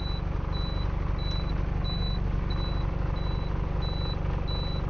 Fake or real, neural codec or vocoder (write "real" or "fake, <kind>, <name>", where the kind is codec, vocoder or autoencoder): real